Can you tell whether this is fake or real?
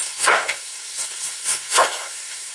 fake